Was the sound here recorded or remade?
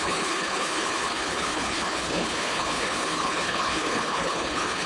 remade